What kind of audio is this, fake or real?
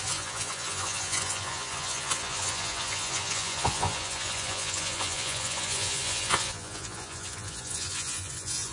fake